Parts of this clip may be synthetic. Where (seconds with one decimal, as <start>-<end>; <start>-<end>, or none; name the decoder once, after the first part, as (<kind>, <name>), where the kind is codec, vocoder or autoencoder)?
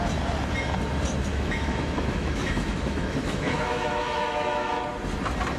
1.3-4.7 (autoencoder, DAC-VAE)